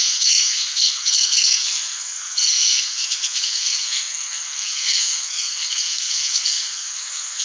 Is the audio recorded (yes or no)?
no